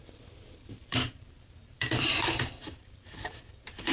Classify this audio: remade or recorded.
remade